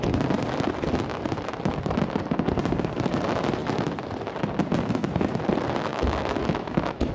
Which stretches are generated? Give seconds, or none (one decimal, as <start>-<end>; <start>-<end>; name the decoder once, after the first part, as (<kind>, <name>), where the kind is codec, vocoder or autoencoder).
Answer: 5.9-7.1 (autoencoder, DAC-VAE)